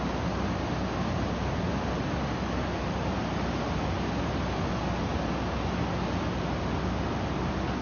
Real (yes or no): yes